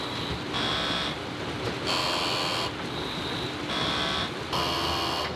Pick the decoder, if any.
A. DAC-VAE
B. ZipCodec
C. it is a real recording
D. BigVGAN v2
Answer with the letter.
C